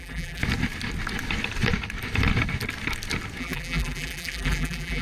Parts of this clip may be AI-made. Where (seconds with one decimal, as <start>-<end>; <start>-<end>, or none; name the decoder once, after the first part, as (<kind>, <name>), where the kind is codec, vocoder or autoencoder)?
0.0-0.4 (vocoder, BigVGAN v2); 3.4-5.0